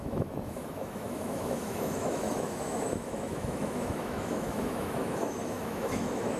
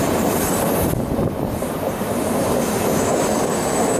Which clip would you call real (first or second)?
second